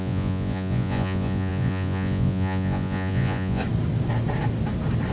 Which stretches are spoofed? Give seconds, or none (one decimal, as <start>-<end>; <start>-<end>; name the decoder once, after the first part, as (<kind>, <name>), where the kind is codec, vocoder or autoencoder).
0.0-3.6 (vocoder, Vocos)